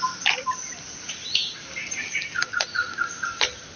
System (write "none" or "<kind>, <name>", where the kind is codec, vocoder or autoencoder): vocoder, BigVGAN v2